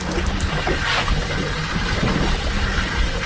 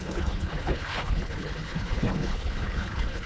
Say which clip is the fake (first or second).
second